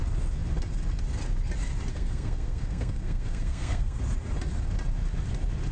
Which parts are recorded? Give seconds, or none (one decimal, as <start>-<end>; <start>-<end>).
0.0-1.9; 4.0-5.7